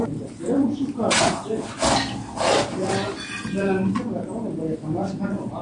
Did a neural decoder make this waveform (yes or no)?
no